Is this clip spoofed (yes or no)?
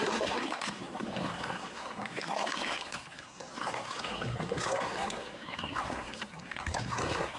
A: yes